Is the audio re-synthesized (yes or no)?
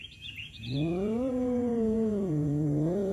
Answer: yes